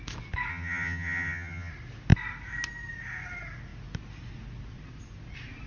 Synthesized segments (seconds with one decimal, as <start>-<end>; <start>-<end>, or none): 0.5-1.7